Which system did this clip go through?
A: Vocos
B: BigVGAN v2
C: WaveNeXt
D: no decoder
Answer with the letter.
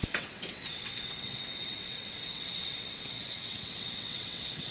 C